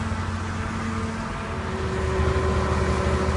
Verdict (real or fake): real